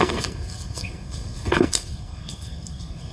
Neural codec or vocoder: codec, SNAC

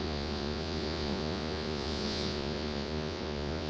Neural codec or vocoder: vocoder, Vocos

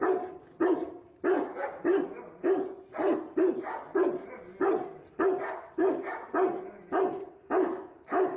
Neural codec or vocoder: none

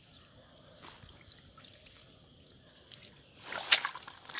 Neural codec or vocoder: none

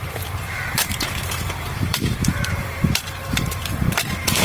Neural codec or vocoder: vocoder, BigVGAN v2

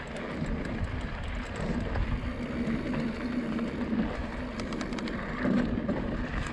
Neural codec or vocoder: none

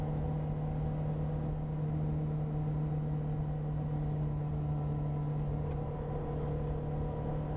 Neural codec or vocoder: none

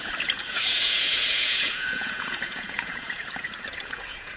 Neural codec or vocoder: vocoder, Vocos